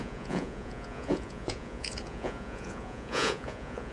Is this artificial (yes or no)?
yes